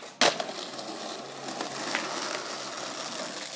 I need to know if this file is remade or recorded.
recorded